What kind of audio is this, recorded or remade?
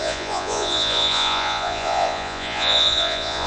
remade